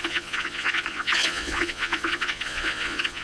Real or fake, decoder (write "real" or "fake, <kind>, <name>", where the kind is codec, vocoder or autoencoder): fake, vocoder, Vocos